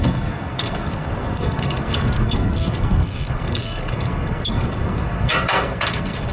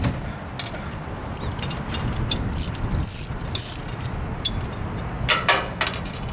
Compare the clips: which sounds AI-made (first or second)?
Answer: first